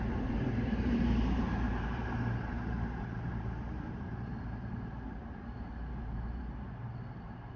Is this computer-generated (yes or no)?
yes